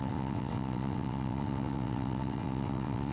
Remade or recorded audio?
remade